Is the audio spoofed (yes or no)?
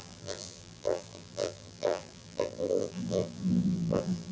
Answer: yes